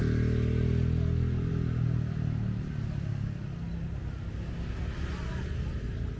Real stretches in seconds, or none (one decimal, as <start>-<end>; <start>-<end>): 0.0-6.2